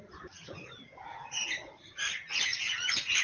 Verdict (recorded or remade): remade